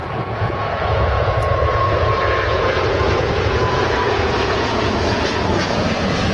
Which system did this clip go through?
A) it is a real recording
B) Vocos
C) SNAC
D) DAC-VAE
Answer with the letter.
B